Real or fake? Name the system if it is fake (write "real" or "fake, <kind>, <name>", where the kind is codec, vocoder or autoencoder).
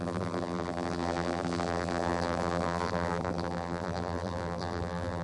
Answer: fake, vocoder, BigVGAN v2